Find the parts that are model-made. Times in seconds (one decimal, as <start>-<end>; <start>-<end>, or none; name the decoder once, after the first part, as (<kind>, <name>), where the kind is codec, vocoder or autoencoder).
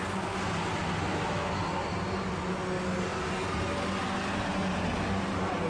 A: 1.1-1.6 (autoencoder, DAC-VAE)